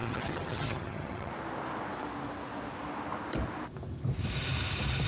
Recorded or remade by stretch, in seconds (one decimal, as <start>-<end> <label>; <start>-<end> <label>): 0.0-1.3 remade; 1.3-5.1 recorded